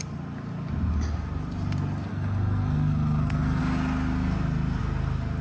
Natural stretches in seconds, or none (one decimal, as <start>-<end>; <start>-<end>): 0.0-2.1; 3.6-5.4